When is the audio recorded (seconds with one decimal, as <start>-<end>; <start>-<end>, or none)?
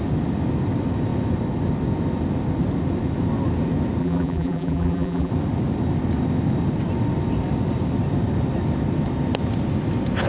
0.0-4.0; 5.3-10.3